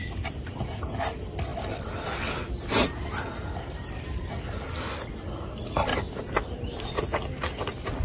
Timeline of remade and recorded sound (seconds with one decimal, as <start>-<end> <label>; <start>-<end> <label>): 0.0-0.8 remade; 0.8-1.5 recorded; 1.5-4.8 remade; 4.8-5.9 recorded; 5.9-6.8 remade; 6.8-8.0 recorded